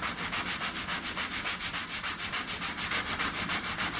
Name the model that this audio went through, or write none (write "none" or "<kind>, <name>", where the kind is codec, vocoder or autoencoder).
vocoder, BigVGAN v2